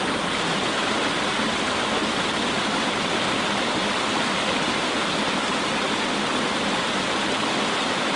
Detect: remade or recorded recorded